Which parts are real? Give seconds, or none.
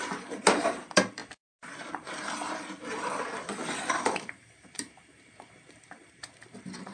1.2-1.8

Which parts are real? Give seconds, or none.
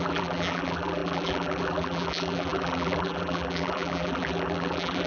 none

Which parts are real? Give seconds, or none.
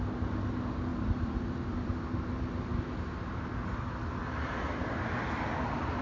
0.0-0.9; 2.8-6.0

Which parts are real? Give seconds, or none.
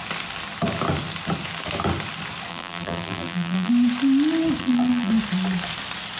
0.0-2.5; 3.7-4.6; 5.1-6.2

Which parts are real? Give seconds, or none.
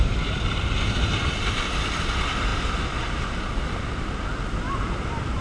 2.5-4.7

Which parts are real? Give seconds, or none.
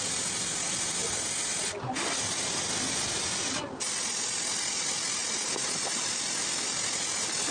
0.0-7.5